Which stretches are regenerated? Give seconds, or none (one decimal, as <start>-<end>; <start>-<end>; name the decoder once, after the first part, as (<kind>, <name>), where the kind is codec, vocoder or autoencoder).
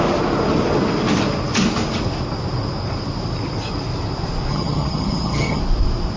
4.5-5.6 (vocoder, HiFi-GAN)